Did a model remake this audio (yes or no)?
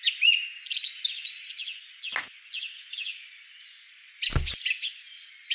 no